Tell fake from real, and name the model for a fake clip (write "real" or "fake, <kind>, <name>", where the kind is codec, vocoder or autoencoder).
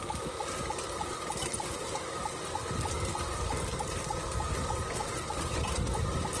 real